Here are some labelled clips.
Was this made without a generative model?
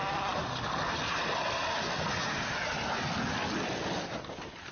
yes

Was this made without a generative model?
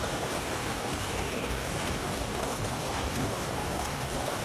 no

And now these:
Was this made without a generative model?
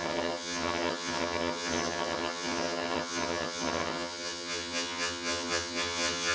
no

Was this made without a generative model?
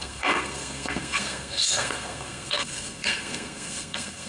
no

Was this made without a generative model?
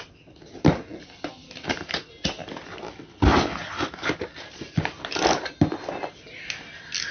yes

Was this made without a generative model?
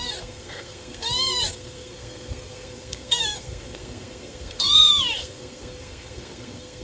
no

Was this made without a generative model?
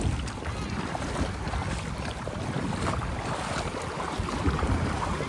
yes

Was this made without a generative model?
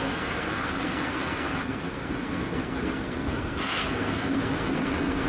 no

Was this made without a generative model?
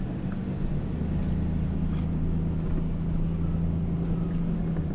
yes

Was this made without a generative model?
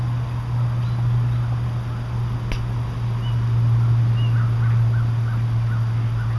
yes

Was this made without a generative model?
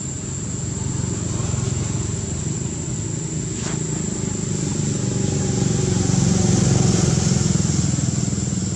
yes